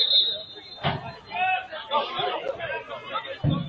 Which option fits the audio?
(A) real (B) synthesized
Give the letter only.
A